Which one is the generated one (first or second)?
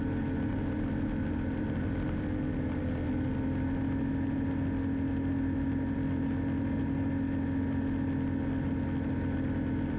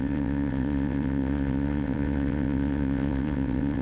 second